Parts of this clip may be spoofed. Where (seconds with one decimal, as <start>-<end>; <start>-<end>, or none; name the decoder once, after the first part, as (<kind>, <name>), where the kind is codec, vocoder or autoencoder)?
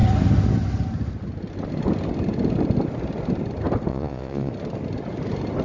3.9-4.5 (vocoder, Vocos)